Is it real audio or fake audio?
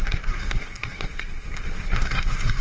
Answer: fake